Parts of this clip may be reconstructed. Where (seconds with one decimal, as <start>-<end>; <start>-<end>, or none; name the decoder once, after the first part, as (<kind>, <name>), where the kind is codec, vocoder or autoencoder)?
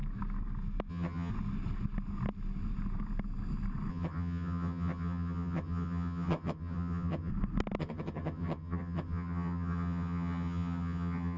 0.9-1.3 (vocoder, HiFi-GAN); 3.9-7.3; 7.8-11.4